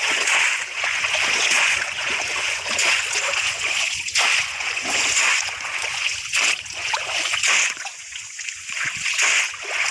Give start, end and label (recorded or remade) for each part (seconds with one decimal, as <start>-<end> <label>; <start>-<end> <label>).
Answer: 0.0-9.9 remade